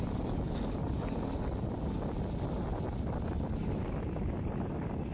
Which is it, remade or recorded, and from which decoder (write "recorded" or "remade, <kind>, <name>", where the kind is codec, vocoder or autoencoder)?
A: recorded